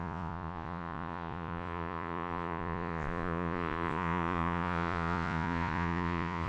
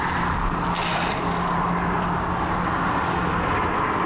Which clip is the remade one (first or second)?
first